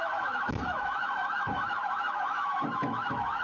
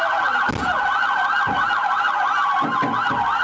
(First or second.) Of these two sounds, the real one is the second